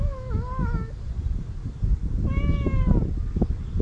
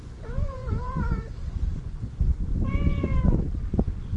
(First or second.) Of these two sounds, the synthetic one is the second